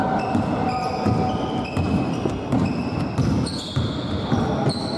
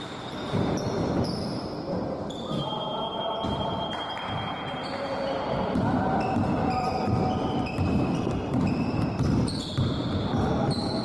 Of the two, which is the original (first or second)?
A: first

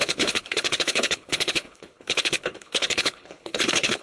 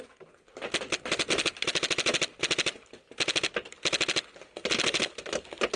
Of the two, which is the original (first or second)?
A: second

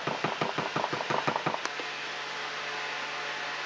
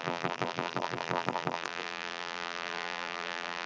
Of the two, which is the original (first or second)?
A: first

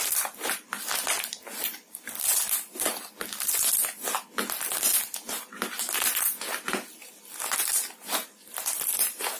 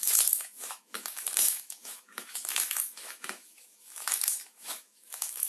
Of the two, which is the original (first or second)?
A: first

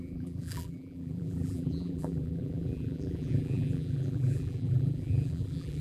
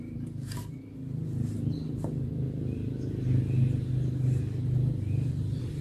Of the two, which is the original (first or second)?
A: second